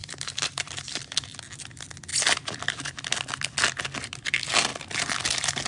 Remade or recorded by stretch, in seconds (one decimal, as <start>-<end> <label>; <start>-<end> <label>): 0.0-1.0 remade; 1.0-5.7 recorded